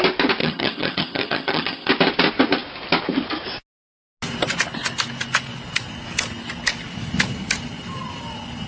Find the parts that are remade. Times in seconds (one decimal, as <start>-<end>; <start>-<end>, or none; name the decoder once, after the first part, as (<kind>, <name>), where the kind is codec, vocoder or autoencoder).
0.4-1.9 (vocoder, HiFi-GAN)